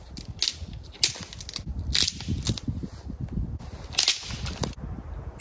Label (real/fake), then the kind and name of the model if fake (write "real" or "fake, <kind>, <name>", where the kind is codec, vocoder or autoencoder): real